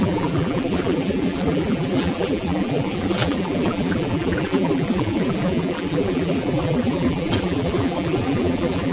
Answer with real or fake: fake